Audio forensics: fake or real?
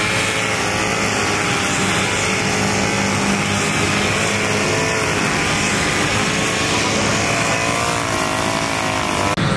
real